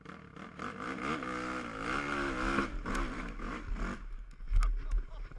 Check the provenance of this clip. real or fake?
real